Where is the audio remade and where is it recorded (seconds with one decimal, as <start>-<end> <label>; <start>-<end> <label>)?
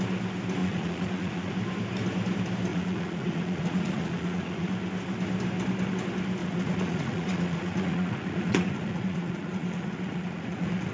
0.0-0.6 recorded; 0.6-1.5 remade; 1.5-2.7 recorded; 2.7-4.7 remade; 4.7-6.4 recorded; 6.4-10.9 remade